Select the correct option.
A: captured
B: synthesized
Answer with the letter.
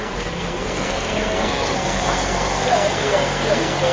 B